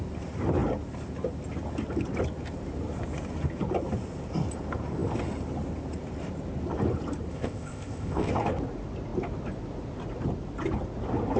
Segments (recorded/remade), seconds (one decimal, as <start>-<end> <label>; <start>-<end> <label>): 0.0-7.3 recorded; 7.3-8.3 remade; 8.3-11.4 recorded